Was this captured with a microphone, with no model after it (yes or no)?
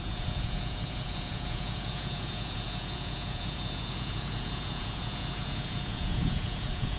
no